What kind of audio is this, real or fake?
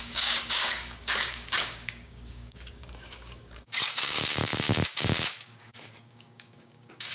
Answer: fake